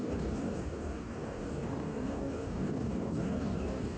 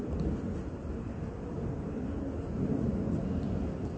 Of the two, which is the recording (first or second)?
second